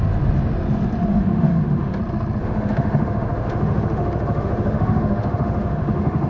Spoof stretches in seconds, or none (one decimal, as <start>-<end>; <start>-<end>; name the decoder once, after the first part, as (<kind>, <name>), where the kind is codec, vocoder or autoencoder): 1.1-2.0 (autoencoder, DAC-VAE); 2.4-6.3